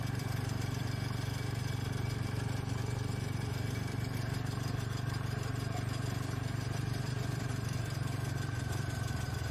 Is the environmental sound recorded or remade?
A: remade